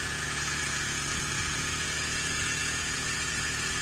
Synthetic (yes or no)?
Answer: yes